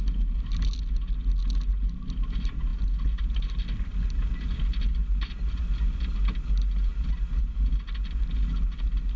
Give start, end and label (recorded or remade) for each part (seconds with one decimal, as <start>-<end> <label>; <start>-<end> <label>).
0.0-9.2 recorded